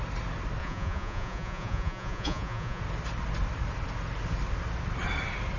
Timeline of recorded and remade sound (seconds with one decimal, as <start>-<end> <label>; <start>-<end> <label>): 0.0-0.6 recorded; 0.6-2.8 remade; 2.8-5.6 recorded